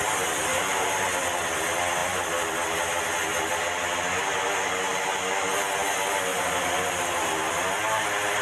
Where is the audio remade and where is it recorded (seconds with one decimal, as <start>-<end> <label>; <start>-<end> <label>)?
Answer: 0.0-0.5 recorded; 0.5-1.0 remade; 1.0-6.3 recorded; 6.3-7.0 remade; 7.0-8.4 recorded